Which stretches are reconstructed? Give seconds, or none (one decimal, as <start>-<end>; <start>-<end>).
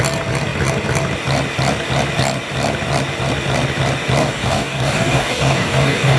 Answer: 4.2-6.2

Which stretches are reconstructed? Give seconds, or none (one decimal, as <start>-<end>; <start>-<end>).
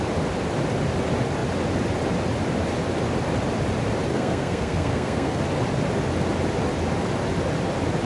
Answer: 4.1-5.4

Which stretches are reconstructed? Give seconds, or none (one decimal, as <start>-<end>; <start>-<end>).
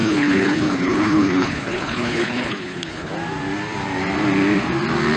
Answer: 0.0-3.1